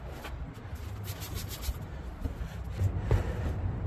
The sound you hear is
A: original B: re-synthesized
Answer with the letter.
A